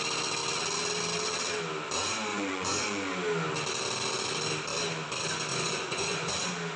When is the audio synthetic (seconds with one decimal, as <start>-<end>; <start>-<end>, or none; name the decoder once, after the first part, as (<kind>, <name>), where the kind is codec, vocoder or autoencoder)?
2.3-3.1 (vocoder, Vocos); 5.5-6.3